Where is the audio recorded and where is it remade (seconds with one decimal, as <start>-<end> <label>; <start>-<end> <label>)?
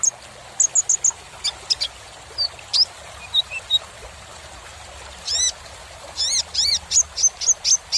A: 0.0-8.0 recorded